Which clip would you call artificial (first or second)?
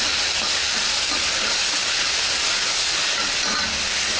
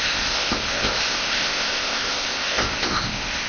second